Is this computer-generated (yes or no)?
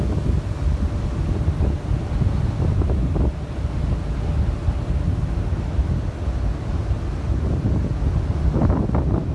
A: no